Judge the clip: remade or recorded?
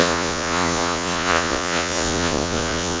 remade